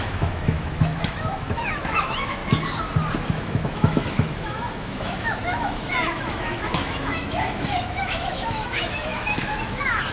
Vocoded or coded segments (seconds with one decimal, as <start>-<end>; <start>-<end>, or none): 0.0-2.4; 3.3-10.1